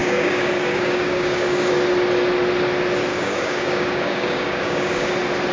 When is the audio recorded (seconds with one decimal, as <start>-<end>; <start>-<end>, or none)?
1.7-3.1; 5.1-5.5